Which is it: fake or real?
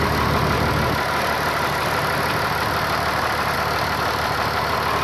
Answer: real